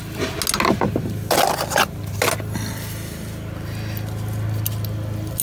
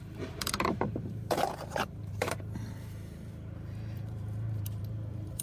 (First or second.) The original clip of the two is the first